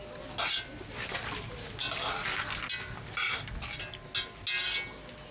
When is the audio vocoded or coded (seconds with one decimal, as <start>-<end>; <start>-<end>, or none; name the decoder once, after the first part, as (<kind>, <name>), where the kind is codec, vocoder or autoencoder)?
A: none